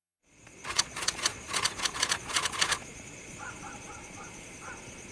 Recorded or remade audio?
remade